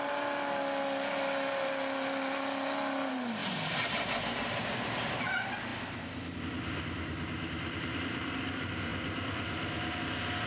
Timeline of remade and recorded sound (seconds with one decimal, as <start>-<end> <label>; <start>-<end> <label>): 0.0-3.4 recorded; 3.4-5.2 remade; 5.2-10.5 recorded